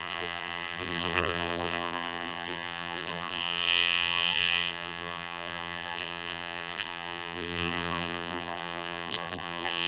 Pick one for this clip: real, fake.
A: fake